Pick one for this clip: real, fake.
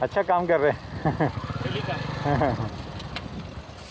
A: real